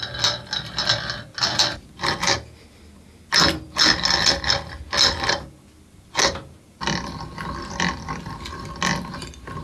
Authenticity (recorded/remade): recorded